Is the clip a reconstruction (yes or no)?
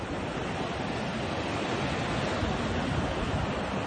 no